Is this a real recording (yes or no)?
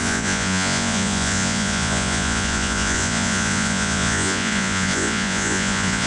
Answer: no